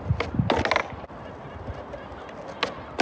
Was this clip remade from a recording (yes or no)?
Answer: no